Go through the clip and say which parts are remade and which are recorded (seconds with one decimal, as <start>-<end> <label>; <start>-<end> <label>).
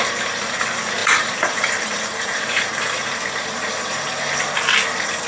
0.0-1.0 recorded; 1.0-2.4 remade; 2.4-5.3 recorded